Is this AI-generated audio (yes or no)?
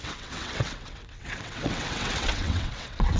yes